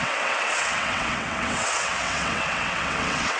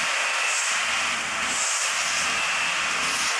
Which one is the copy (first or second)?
first